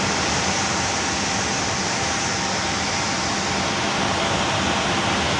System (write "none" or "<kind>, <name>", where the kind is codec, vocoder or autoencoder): vocoder, BigVGAN v2